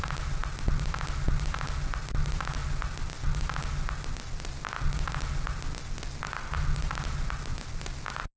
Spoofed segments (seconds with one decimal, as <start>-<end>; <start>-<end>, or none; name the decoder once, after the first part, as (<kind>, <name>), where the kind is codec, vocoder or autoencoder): none